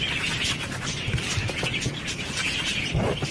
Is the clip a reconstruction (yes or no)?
no